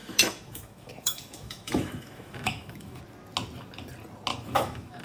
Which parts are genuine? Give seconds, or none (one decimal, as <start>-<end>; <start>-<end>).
3.0-4.3